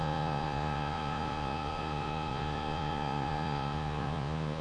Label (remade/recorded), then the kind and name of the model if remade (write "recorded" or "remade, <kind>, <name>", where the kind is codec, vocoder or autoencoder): remade, vocoder, Vocos